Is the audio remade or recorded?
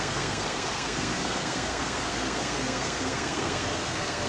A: remade